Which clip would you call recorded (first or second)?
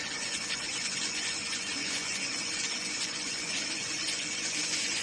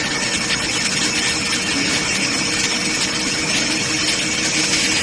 second